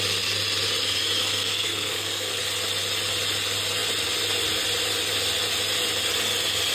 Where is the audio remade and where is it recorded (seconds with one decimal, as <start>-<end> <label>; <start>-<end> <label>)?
0.0-1.2 recorded; 1.2-2.4 remade; 2.4-6.7 recorded